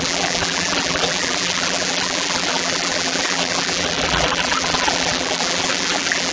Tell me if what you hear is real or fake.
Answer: fake